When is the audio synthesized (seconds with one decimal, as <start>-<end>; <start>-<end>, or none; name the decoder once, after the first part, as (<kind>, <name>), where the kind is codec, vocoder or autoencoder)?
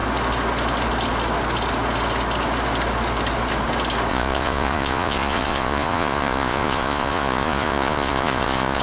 4.1-8.8 (vocoder, Vocos)